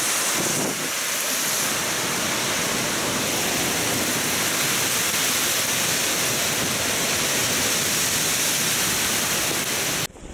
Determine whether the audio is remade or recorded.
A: recorded